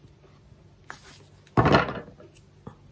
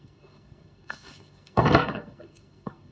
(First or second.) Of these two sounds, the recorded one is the first